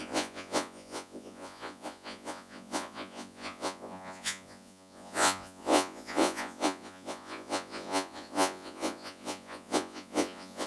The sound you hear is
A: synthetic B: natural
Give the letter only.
A